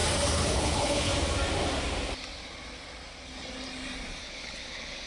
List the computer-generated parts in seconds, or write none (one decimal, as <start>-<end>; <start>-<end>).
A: 0.5-1.1; 4.2-5.1